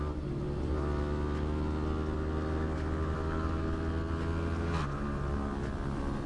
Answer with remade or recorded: recorded